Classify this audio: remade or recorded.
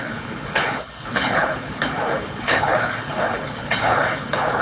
remade